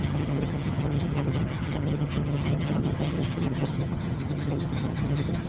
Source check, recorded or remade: remade